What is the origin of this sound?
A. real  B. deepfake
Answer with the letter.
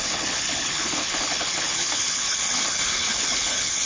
B